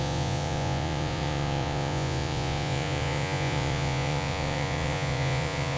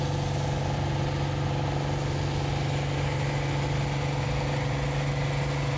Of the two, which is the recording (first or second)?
second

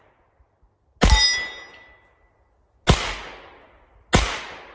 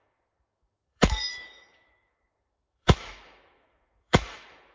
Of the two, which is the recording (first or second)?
first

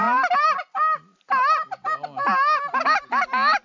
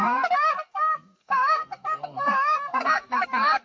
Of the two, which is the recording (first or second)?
first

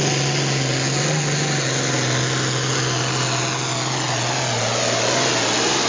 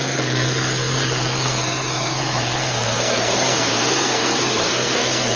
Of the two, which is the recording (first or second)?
first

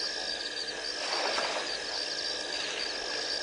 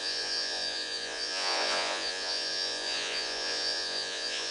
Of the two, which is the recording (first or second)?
first